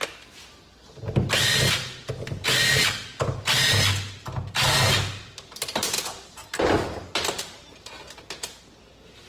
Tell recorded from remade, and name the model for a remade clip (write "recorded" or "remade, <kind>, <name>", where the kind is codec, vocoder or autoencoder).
recorded